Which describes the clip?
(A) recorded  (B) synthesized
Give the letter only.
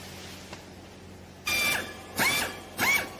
A